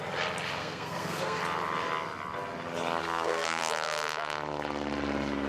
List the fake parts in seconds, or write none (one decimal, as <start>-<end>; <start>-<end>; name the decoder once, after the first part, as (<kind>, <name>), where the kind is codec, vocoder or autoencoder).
0.6-1.4 (codec, SNAC); 3.0-3.6